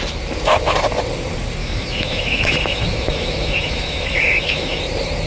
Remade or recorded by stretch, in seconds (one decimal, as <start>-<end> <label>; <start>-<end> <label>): 0.0-1.6 recorded; 1.6-4.8 remade; 4.8-5.3 recorded